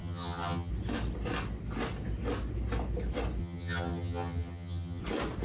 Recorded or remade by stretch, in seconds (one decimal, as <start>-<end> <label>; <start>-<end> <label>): 0.0-0.7 remade; 0.7-3.4 recorded; 3.4-5.0 remade; 5.0-5.4 recorded